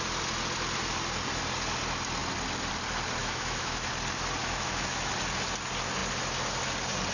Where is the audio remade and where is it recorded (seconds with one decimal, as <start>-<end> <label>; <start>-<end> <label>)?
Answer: 0.0-3.2 recorded; 3.2-3.9 remade; 3.9-4.4 recorded; 4.4-5.1 remade; 5.1-7.1 recorded